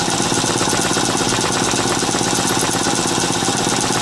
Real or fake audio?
real